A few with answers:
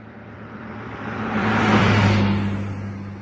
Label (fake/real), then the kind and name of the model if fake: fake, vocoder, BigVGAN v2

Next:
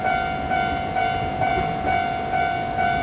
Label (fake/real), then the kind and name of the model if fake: fake, vocoder, BigVGAN v2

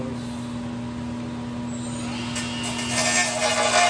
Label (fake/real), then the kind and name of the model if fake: real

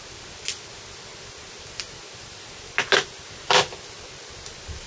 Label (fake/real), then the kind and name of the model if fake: real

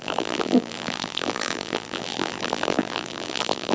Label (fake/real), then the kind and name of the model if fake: fake, vocoder, BigVGAN v2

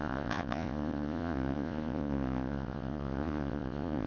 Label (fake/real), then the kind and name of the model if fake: fake, vocoder, Vocos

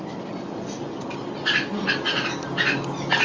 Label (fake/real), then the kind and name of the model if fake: real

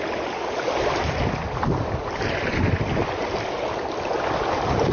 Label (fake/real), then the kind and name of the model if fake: real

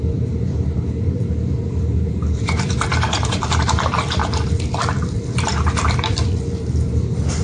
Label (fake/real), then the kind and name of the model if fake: fake, vocoder, BigVGAN v2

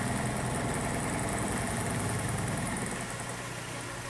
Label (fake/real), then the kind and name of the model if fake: real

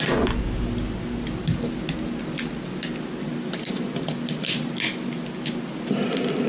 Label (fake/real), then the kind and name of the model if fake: real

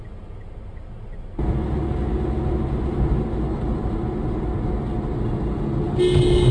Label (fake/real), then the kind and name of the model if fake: real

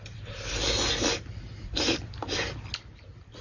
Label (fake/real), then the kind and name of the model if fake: real